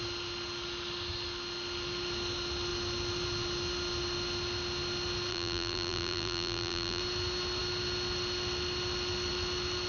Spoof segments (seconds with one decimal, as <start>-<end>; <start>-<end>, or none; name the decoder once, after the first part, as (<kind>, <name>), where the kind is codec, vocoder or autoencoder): 5.3-7.0 (vocoder, BigVGAN v2)